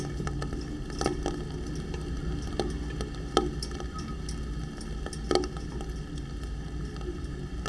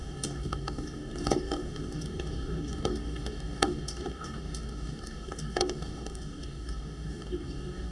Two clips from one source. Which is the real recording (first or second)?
first